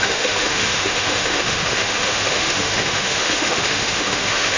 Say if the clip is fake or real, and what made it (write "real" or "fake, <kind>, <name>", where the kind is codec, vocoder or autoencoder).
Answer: fake, autoencoder, DAC-VAE